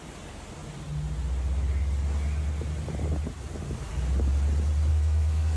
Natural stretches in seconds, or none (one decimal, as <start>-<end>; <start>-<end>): 0.0-4.9